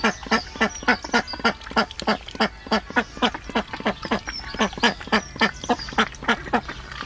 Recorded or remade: recorded